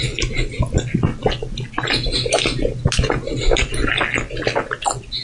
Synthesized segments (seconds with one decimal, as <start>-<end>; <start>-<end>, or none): none